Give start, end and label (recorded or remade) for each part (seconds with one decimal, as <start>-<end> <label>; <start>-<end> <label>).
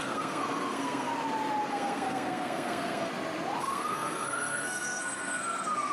0.0-1.1 remade; 1.1-1.7 recorded; 1.7-3.1 remade; 3.1-3.6 recorded; 3.6-5.9 remade